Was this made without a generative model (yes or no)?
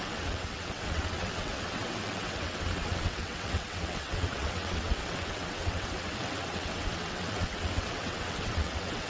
no